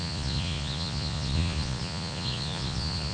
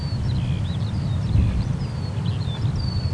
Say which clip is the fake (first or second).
first